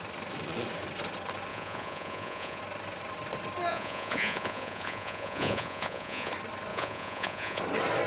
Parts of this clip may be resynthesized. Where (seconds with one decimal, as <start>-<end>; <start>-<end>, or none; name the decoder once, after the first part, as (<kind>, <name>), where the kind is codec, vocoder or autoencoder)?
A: 1.5-2.6 (vocoder, Vocos); 3.7-6.3; 6.7-7.6